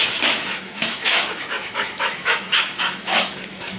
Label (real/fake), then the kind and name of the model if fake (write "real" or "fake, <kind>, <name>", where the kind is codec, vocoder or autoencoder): fake, autoencoder, DAC-VAE